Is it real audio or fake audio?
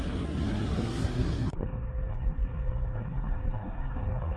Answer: fake